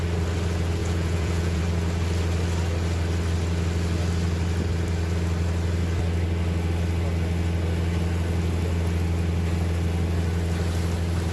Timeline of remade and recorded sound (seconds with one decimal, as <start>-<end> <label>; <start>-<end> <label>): 0.0-0.8 recorded; 0.8-1.6 remade; 1.6-11.3 recorded